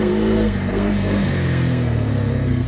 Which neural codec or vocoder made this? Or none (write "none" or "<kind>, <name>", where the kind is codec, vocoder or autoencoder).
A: codec, SNAC